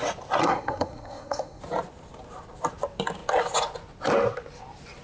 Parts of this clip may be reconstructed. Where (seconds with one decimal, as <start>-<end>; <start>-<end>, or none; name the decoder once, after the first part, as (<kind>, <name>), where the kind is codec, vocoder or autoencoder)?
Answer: 0.4-1.6 (codec, SNAC)